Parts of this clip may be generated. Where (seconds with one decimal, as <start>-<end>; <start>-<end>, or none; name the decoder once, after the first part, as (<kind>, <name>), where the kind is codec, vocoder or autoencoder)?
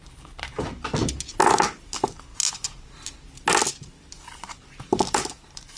0.0-2.3 (vocoder, BigVGAN v2); 3.7-5.8